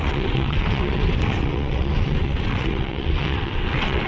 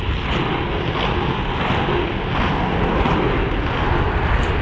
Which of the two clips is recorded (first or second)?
second